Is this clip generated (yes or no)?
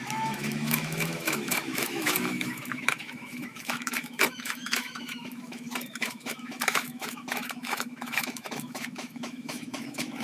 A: yes